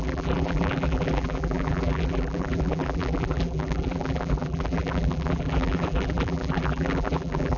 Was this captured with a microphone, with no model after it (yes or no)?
no